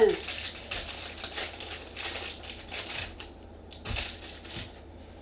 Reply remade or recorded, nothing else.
recorded